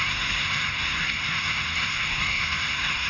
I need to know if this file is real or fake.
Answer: fake